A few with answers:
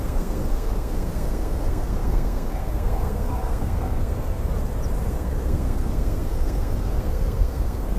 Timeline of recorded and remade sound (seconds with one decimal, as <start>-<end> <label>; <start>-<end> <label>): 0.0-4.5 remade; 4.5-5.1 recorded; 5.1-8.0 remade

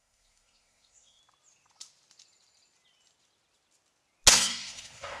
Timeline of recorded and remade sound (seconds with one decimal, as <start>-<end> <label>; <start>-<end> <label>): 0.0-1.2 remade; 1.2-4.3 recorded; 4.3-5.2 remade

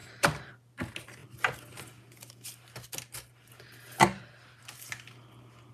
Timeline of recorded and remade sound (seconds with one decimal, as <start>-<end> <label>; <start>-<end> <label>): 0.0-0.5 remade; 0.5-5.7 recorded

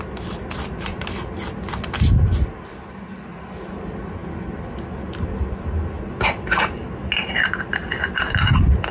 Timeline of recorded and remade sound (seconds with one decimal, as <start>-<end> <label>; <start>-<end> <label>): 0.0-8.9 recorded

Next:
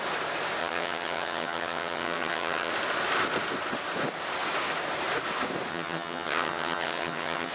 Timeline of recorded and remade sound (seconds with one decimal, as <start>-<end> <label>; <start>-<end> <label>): 0.0-0.6 recorded; 0.6-2.7 remade; 2.7-5.7 recorded; 5.7-7.5 remade

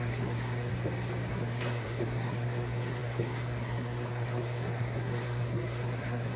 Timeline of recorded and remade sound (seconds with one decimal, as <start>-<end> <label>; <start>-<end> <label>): 0.0-0.7 remade; 0.7-1.3 recorded; 1.3-6.4 remade